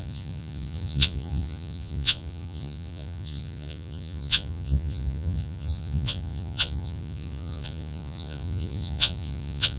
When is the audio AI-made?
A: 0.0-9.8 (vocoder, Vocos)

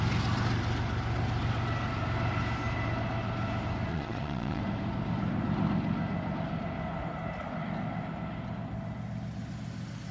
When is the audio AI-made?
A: 3.9-4.6 (vocoder, Vocos)

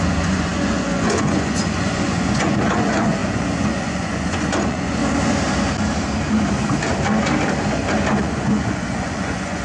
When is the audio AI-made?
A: 0.0-5.0 (vocoder, Vocos); 8.1-9.6

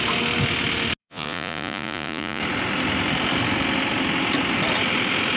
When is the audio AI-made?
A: 1.0-2.4 (vocoder, Vocos)

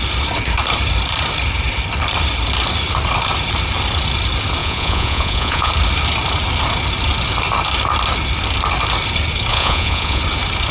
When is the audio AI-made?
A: 4.6-5.7 (vocoder, Vocos); 9.5-10.2

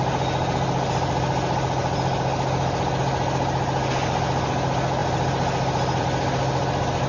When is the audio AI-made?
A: none

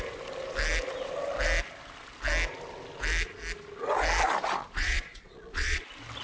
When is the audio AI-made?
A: 4.6-5.8 (vocoder, Vocos)